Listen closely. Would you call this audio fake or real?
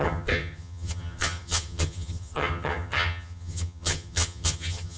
fake